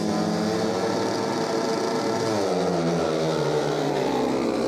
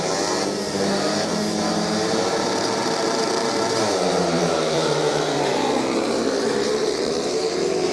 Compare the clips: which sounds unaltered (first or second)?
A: first